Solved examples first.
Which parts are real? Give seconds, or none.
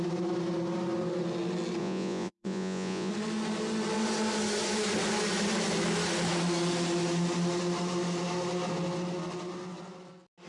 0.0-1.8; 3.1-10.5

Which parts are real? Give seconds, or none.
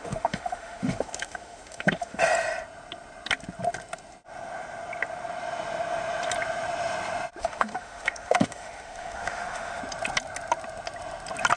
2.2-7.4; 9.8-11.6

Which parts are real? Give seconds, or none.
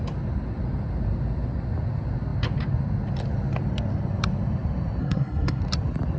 0.0-5.0; 5.6-6.2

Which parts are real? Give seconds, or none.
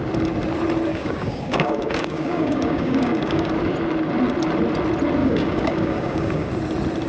0.0-0.9; 3.5-5.2; 6.5-7.1